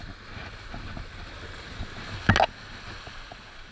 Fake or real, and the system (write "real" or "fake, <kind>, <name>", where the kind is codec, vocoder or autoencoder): real